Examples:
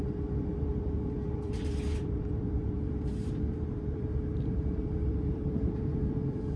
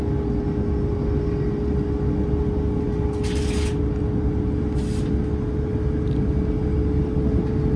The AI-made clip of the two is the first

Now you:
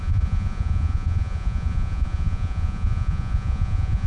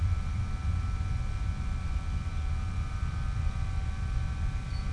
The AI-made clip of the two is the first